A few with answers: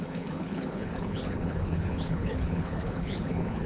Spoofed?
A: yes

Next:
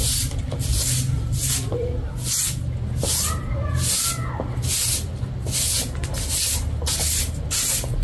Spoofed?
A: no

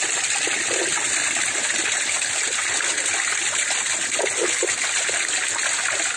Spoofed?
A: no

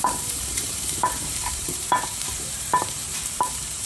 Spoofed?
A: yes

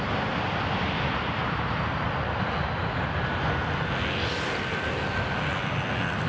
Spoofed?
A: no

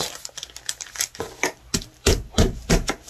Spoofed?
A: yes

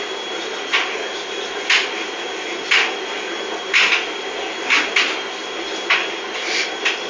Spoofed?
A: no